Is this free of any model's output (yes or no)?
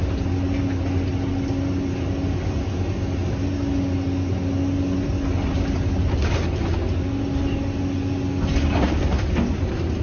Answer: yes